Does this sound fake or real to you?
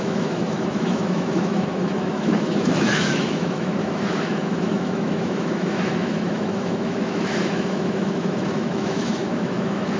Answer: fake